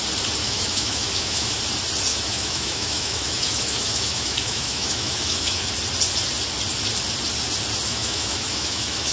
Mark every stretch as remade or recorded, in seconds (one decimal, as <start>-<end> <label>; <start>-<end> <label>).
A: 0.0-0.4 recorded; 0.4-1.6 remade; 1.6-2.1 recorded; 2.1-5.7 remade; 5.7-7.9 recorded; 7.9-9.1 remade